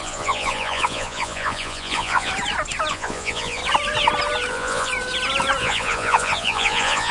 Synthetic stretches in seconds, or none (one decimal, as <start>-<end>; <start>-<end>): 0.0-2.3; 2.9-3.6; 4.5-4.9; 5.6-7.1